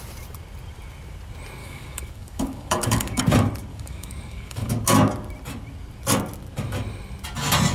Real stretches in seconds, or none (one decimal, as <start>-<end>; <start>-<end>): 0.0-1.6; 3.2-3.7; 4.7-7.7